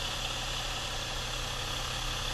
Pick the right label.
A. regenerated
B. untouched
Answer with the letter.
B